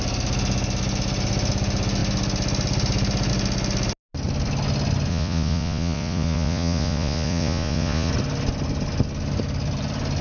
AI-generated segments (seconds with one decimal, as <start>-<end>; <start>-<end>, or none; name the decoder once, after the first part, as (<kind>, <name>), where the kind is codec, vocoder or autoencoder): 5.1-8.1 (vocoder, Vocos)